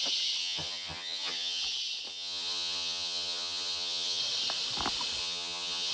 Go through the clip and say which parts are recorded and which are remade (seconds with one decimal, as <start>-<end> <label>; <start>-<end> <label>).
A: 0.0-0.4 recorded; 0.4-1.6 remade; 1.6-2.1 recorded; 2.1-4.2 remade; 4.2-5.2 recorded; 5.2-5.9 remade

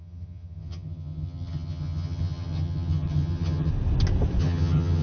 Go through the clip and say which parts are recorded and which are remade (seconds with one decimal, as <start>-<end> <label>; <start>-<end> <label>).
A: 0.0-3.7 remade; 3.7-4.4 recorded; 4.4-5.0 remade

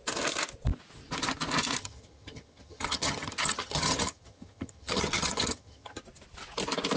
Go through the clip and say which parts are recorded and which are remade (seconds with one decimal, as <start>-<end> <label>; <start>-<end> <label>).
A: 0.0-1.8 recorded; 1.8-6.0 remade; 6.0-7.0 recorded

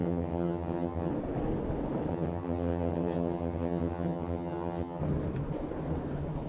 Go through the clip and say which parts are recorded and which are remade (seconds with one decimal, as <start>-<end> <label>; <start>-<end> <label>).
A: 0.0-1.1 remade; 1.1-2.1 recorded; 2.1-5.0 remade; 5.0-6.5 recorded

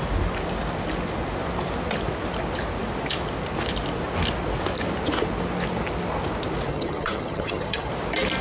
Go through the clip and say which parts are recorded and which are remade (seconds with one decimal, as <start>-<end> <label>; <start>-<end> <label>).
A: 0.0-6.7 recorded; 6.7-7.9 remade; 7.9-8.4 recorded

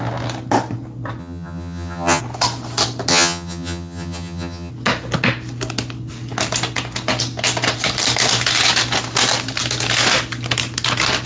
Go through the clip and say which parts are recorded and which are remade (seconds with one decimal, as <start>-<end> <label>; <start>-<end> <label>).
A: 0.0-1.2 recorded; 1.2-2.2 remade; 2.2-3.1 recorded; 3.1-4.7 remade; 4.7-11.3 recorded

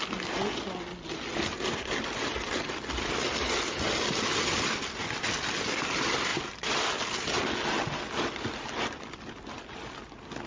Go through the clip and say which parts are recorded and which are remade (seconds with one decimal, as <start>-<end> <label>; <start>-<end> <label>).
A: 0.0-10.5 recorded